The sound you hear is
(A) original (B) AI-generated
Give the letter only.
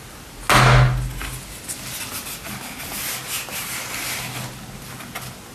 A